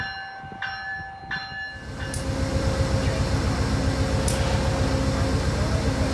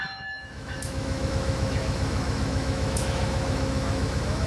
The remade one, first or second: second